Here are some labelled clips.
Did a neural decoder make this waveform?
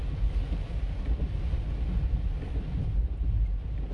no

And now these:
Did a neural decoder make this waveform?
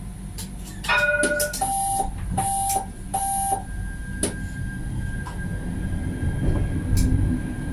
no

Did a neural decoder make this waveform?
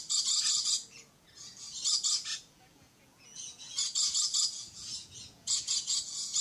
yes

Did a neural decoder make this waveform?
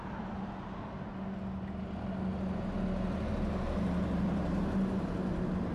no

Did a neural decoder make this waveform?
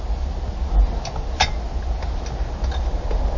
no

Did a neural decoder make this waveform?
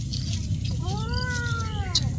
no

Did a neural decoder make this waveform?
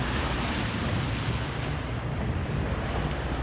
no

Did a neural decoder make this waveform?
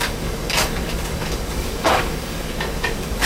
yes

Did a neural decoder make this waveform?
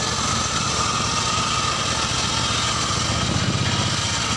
no